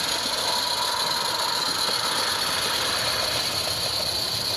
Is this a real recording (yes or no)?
yes